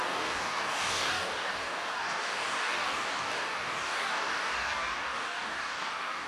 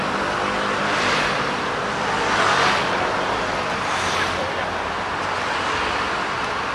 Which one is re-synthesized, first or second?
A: first